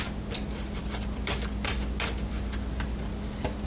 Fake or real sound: real